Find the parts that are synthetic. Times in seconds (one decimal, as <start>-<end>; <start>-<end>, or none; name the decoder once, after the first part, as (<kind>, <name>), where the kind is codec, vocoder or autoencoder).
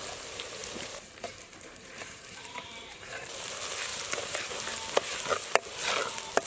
0.6-3.5 (vocoder, BigVGAN v2); 3.9-4.5